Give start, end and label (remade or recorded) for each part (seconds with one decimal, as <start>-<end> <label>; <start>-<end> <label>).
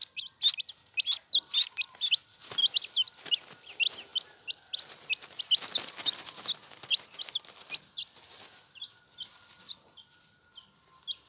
0.0-11.3 recorded